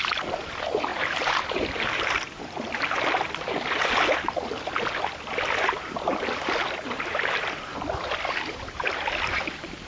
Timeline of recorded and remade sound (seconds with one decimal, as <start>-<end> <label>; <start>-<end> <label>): 0.0-0.9 recorded; 0.9-2.0 remade; 2.0-9.9 recorded